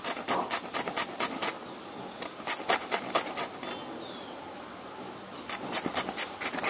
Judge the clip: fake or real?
real